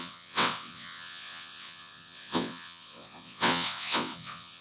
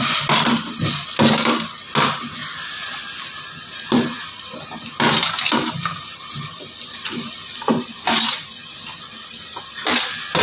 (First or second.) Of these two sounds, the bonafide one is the second